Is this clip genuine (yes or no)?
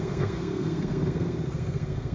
no